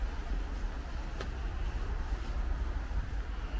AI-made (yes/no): no